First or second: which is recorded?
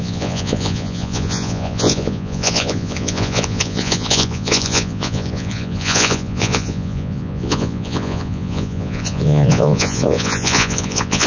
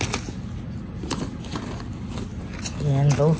second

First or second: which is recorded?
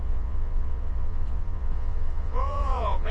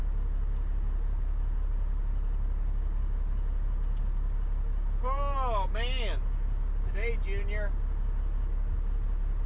second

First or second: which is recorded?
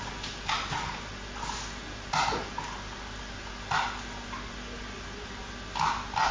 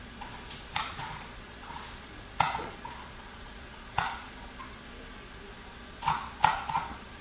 first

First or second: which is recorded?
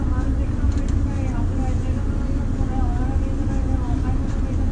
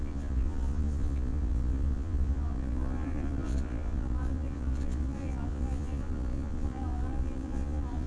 first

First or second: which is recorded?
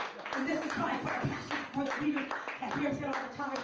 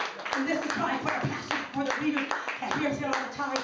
second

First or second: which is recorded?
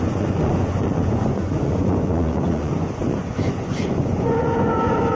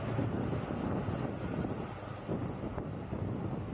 second